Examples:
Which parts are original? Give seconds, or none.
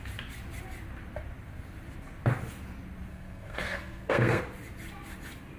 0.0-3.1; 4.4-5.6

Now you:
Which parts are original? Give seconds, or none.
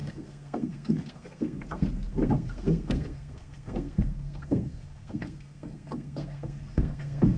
none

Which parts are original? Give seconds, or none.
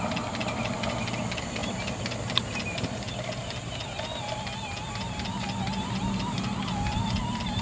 0.0-7.6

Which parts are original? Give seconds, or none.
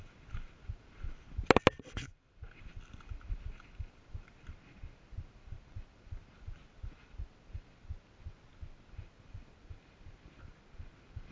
0.0-11.3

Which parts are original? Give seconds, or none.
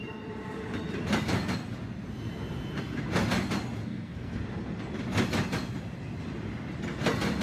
0.0-3.8; 4.4-7.4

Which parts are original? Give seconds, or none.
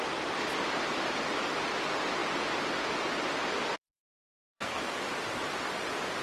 0.0-4.1; 4.8-6.2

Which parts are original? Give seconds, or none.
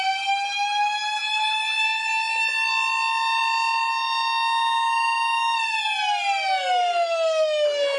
0.0-8.0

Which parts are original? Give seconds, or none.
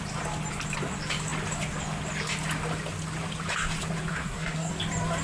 0.0-4.1; 4.7-5.2